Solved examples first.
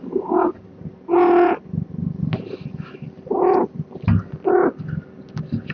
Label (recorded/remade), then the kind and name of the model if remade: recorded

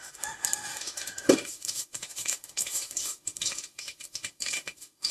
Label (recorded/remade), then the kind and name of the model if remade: remade, autoencoder, DAC-VAE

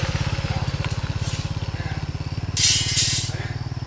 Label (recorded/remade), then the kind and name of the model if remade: recorded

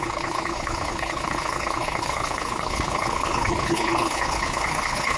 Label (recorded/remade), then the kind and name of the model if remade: remade, codec, HILCodec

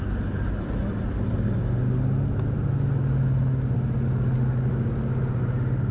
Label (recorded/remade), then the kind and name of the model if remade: recorded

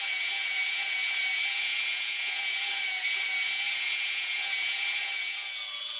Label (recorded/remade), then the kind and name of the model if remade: remade, vocoder, Vocos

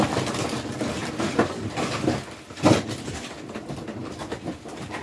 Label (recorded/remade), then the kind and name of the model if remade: remade, vocoder, BigVGAN v2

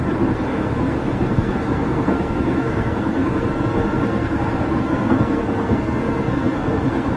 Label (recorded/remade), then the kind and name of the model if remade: remade, codec, SNAC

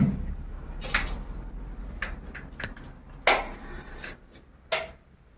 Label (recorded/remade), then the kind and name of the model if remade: recorded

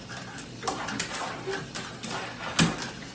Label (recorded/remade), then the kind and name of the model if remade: recorded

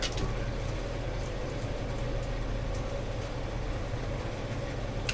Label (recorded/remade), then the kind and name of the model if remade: recorded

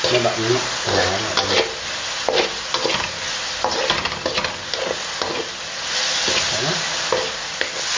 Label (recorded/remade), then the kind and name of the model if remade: recorded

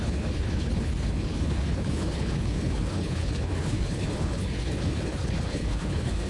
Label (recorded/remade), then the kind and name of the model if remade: remade, codec, HILCodec